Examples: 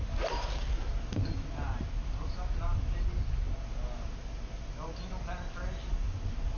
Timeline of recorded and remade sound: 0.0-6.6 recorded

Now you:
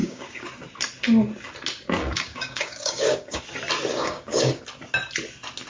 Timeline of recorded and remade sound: 0.0-0.5 remade; 0.5-2.0 recorded; 2.0-3.4 remade; 3.4-3.9 recorded; 3.9-4.6 remade; 4.6-5.7 recorded

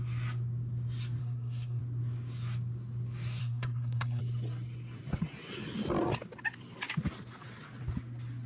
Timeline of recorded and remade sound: 0.0-1.2 recorded; 1.2-1.8 remade; 1.8-3.4 recorded; 3.4-4.2 remade; 4.2-8.5 recorded

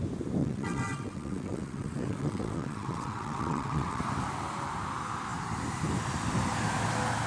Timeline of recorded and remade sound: 0.0-0.4 recorded; 0.4-4.0 remade; 4.0-7.3 recorded

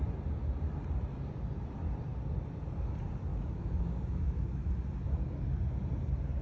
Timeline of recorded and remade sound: 0.0-3.3 recorded; 3.3-4.7 remade; 4.7-6.4 recorded

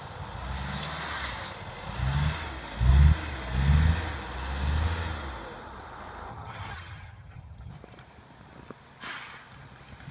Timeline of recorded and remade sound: 0.0-6.3 recorded; 6.3-7.7 remade; 7.7-10.1 recorded

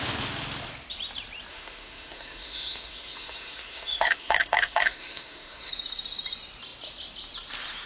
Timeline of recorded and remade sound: 0.0-1.5 recorded; 1.5-5.7 remade; 5.7-7.9 recorded